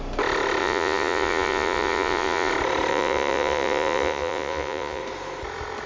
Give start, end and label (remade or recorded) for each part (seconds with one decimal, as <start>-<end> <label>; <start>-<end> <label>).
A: 0.0-0.6 recorded; 0.6-2.5 remade; 2.5-2.9 recorded; 2.9-5.0 remade; 5.0-5.9 recorded